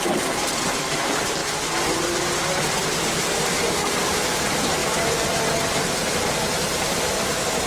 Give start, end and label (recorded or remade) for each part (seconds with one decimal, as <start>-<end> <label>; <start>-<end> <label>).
0.0-1.4 remade; 1.4-2.7 recorded; 2.7-4.8 remade; 4.8-5.7 recorded; 5.7-7.7 remade